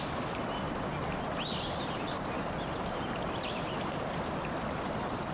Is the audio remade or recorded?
remade